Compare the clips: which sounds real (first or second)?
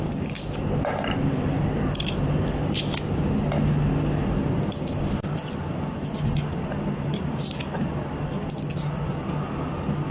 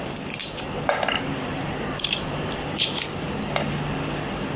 first